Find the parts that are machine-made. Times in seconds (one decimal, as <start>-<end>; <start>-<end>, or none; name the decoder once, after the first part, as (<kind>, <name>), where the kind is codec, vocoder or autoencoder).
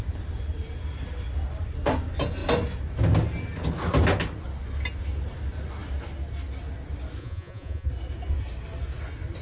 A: 7.2-7.9 (vocoder, Vocos)